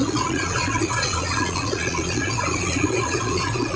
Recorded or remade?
remade